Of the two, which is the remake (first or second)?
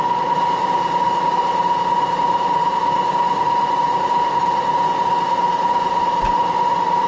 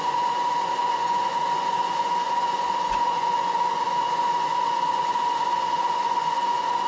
second